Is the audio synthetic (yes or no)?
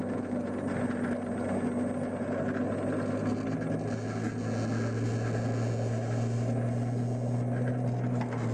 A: no